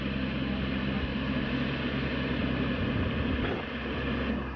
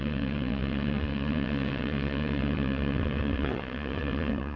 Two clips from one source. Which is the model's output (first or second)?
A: second